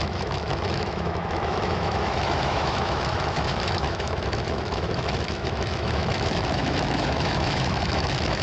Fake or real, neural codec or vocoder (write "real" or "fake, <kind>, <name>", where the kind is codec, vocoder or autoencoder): fake, autoencoder, DAC-VAE